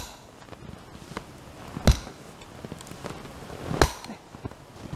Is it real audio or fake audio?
real